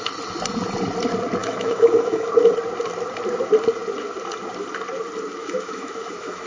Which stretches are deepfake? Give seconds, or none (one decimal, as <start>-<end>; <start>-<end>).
1.4-2.3; 5.4-6.5